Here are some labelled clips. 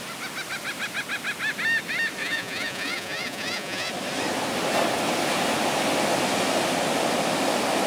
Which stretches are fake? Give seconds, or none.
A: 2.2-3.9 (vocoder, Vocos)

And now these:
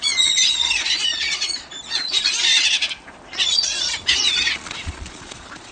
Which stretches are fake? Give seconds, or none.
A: 0.0-2.5 (vocoder, Vocos); 3.3-5.7

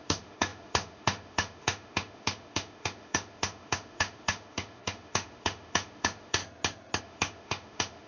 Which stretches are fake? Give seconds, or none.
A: 0.0-6.4 (autoencoder, DAC-VAE); 7.0-8.1

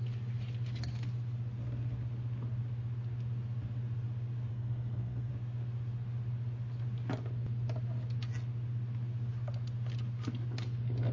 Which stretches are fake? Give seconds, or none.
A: 4.5-5.3 (codec, SNAC)

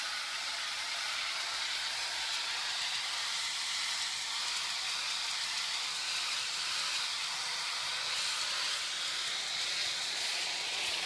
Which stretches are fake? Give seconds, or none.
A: 9.8-11.1 (vocoder, Vocos)

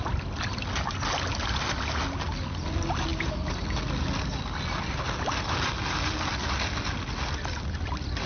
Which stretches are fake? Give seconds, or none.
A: none

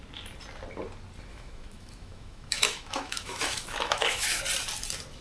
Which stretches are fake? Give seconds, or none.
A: 1.3-4.4 (autoencoder, DAC-VAE)

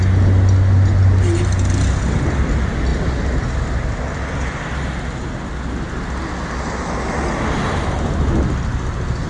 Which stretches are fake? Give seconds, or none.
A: none